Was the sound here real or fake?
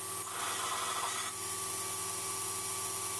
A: real